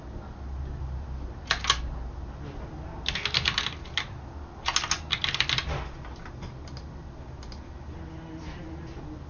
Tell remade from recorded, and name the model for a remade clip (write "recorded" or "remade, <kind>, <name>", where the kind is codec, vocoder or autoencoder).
recorded